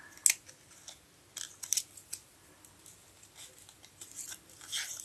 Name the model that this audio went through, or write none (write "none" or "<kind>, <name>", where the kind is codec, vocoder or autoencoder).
none